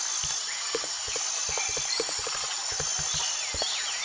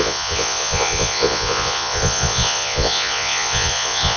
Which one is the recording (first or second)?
first